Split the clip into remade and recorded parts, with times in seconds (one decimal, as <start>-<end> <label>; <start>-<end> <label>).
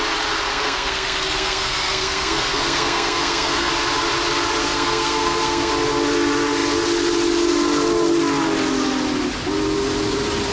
0.0-0.5 recorded; 0.5-3.7 remade; 3.7-4.6 recorded; 4.6-5.7 remade; 5.7-10.5 recorded